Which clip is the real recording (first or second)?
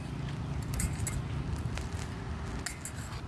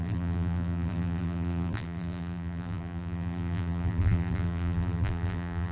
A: first